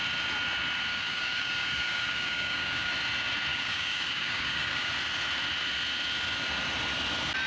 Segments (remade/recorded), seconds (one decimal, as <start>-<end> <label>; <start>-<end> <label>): 0.0-0.9 recorded; 0.9-2.9 remade; 2.9-3.5 recorded; 3.5-4.9 remade; 4.9-7.5 recorded